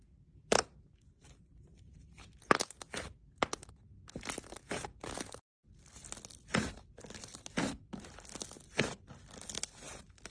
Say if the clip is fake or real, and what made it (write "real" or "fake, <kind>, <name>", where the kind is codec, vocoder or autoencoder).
real